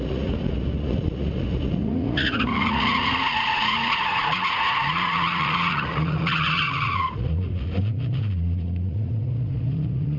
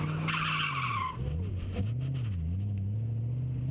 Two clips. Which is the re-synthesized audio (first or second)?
first